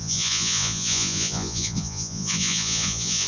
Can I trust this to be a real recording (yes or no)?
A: no